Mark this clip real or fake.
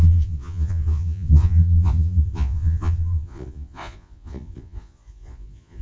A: fake